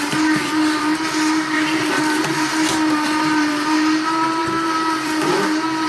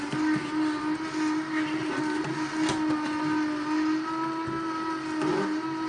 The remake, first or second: first